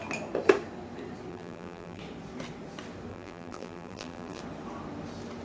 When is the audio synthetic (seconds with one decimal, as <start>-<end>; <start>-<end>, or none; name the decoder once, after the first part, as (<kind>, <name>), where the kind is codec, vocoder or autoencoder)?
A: 1.3-2.0 (vocoder, BigVGAN v2); 3.1-4.4